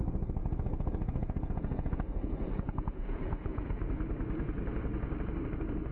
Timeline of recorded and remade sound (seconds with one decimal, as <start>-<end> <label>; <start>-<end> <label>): 0.0-0.4 recorded; 0.4-3.9 remade; 3.9-5.9 recorded